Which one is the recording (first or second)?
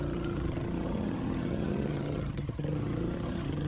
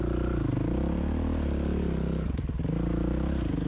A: second